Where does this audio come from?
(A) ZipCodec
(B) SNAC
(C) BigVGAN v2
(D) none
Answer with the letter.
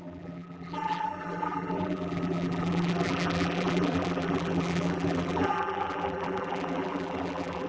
C